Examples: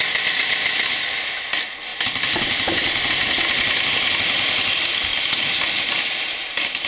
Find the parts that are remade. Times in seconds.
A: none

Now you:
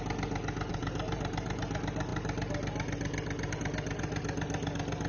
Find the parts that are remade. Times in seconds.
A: 0.7-1.6 (vocoder, BigVGAN v2)

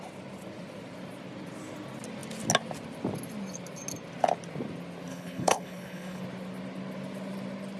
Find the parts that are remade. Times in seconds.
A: 5.1-6.2 (codec, HILCodec)

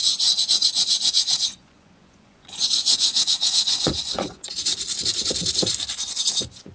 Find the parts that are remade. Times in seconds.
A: 0.0-4.7 (vocoder, Vocos); 5.9-6.7